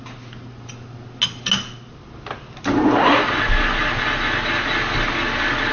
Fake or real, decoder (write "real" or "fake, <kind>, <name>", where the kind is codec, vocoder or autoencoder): real